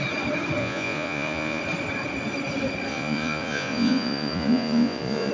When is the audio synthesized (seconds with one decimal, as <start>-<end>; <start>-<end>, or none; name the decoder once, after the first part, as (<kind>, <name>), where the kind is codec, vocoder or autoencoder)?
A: 0.6-1.6 (vocoder, Vocos); 2.9-5.3

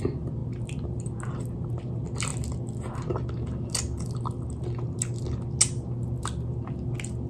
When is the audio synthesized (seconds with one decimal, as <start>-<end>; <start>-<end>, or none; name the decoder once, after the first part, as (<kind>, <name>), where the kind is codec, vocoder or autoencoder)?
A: none

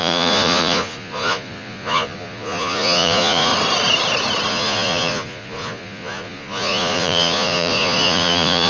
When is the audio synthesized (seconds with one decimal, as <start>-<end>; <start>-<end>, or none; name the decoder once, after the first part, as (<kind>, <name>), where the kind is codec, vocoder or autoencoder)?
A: 0.0-3.5 (vocoder, Vocos); 4.5-8.7

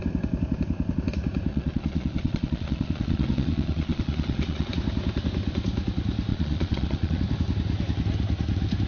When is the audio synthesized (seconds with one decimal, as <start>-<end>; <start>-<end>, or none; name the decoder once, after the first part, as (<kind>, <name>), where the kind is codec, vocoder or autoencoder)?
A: 1.5-4.7 (vocoder, Vocos); 6.3-7.2

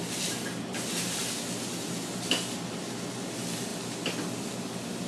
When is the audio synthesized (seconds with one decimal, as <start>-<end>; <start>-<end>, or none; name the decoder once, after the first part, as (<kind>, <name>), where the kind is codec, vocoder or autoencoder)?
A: none

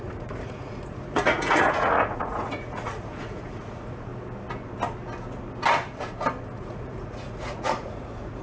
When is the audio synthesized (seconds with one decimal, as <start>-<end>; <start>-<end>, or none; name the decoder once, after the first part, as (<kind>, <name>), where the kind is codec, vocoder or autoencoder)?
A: 0.0-4.1 (vocoder, Vocos); 6.6-8.4

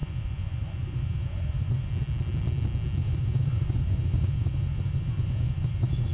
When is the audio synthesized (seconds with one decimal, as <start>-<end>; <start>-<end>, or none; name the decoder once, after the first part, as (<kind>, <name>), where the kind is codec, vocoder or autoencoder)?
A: 0.0-1.9 (vocoder, Vocos); 3.0-6.1

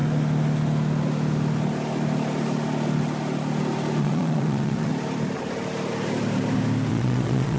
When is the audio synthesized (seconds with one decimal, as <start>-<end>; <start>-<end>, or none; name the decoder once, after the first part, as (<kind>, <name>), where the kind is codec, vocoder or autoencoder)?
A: 4.0-4.9 (vocoder, Vocos); 6.9-7.6